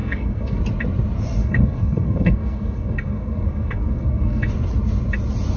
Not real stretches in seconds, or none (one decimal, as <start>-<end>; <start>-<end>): 0.0-0.6; 1.4-4.5